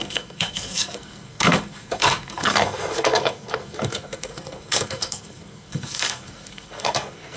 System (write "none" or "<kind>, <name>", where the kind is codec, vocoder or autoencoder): codec, SNAC